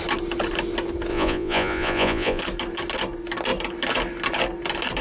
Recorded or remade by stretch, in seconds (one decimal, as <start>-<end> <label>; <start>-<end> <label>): 0.0-1.1 recorded; 1.1-2.4 remade; 2.4-5.0 recorded